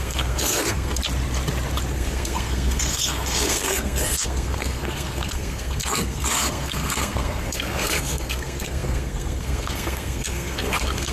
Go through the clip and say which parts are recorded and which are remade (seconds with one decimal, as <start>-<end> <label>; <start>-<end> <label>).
0.0-1.0 remade; 1.0-1.9 recorded; 1.9-11.1 remade